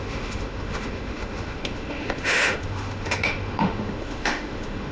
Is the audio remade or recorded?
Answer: remade